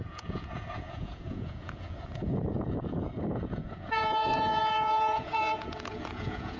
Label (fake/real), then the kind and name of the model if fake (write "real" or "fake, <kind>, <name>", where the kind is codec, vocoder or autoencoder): fake, vocoder, Vocos